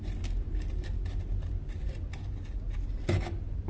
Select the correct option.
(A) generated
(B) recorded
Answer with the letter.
B